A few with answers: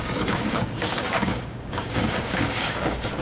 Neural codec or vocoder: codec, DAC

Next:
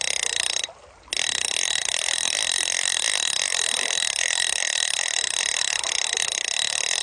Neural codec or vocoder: none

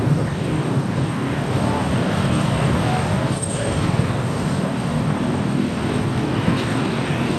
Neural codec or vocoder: codec, DAC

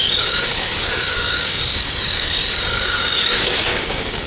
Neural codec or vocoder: codec, DAC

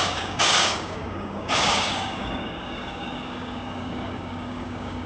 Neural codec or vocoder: codec, DAC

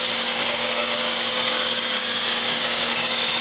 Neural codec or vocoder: codec, DAC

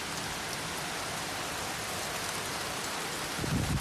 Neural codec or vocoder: none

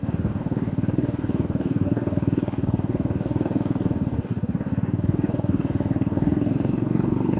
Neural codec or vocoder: codec, DAC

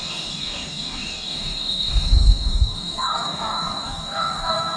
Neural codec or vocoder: codec, DAC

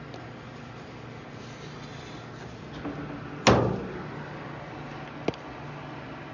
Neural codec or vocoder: none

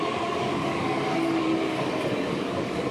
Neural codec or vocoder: codec, DAC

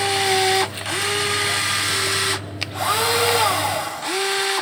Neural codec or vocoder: none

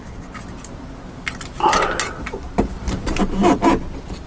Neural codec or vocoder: none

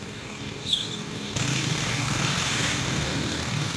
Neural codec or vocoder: codec, DAC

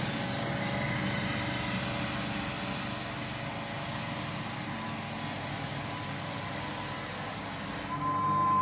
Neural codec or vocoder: none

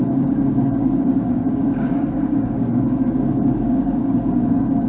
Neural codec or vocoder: codec, DAC